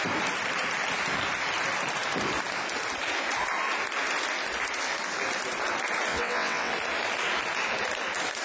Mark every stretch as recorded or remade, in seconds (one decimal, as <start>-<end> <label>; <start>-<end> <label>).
0.0-6.1 recorded; 6.1-6.7 remade; 6.7-8.4 recorded